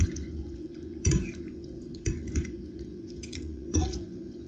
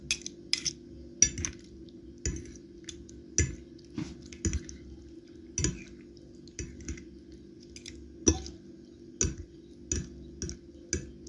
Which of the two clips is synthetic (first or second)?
first